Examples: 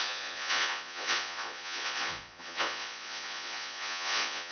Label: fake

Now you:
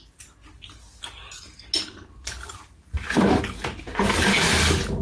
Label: real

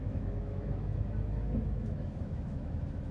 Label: fake